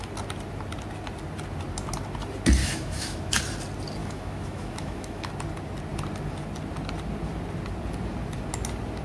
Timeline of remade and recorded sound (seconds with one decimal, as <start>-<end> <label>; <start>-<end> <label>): 0.0-2.6 recorded; 2.6-3.4 remade; 3.4-4.0 recorded; 4.0-5.3 remade; 5.3-9.0 recorded